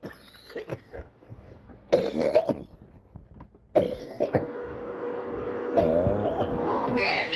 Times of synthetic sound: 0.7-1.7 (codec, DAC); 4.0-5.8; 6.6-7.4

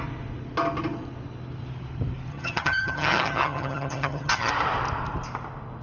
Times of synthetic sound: 2.3-4.5 (vocoder, HiFi-GAN)

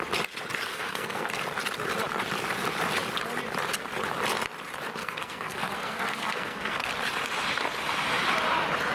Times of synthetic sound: 0.7-1.4 (codec, SNAC); 5.0-6.9

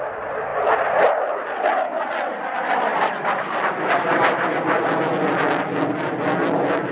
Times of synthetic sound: none

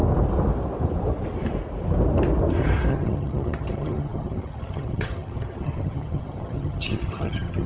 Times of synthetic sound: 2.9-7.7 (vocoder, HiFi-GAN)

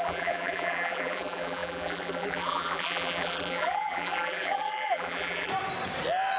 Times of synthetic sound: 0.0-5.5 (vocoder, BigVGAN v2)